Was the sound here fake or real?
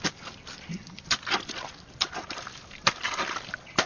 real